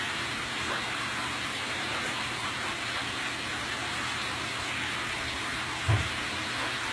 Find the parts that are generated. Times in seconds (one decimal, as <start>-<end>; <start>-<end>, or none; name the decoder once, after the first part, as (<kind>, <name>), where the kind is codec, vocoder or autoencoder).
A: none